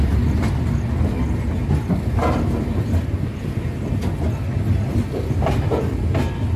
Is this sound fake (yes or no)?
no